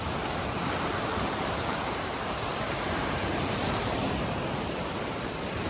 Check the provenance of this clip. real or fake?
fake